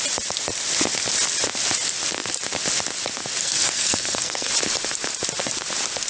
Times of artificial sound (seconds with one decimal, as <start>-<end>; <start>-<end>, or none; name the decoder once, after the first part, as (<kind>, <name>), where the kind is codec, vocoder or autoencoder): 3.4-4.5 (codec, SNAC)

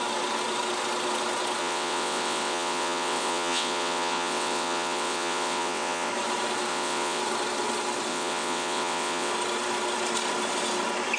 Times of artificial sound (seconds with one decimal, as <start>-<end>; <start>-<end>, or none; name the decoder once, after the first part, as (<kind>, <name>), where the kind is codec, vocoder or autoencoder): 1.6-6.1 (vocoder, WaveNeXt); 6.7-7.2; 8.1-9.3

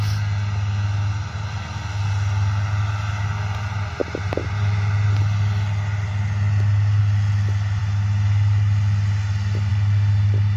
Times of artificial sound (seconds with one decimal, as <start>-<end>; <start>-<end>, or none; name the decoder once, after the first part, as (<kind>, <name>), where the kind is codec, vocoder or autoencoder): none